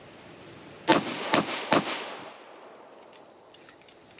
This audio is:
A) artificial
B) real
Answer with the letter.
B